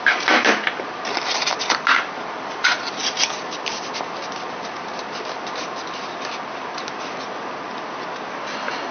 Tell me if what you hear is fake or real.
real